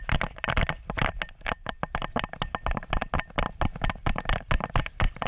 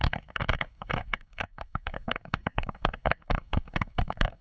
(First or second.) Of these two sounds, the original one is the first